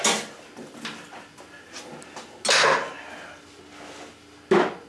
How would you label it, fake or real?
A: real